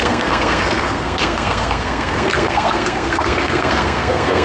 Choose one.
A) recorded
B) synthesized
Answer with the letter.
B